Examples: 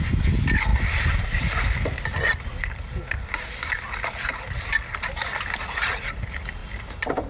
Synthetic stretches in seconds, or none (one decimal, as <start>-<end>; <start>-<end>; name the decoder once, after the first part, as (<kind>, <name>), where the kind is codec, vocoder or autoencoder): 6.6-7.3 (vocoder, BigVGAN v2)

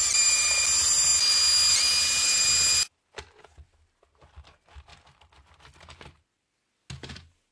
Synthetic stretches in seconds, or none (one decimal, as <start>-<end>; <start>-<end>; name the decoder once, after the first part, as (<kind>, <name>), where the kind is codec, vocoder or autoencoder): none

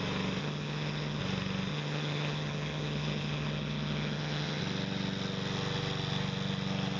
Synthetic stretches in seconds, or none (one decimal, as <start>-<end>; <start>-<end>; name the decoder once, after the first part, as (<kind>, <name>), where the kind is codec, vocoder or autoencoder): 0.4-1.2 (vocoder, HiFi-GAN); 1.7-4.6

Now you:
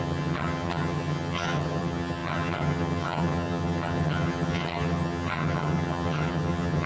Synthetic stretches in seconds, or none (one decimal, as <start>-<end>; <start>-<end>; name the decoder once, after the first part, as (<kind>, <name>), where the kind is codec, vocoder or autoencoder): 0.0-6.9 (vocoder, HiFi-GAN)